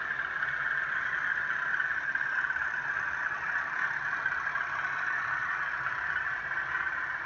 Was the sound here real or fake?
real